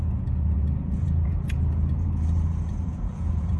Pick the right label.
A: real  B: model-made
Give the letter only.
B